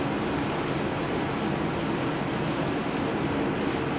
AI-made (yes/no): no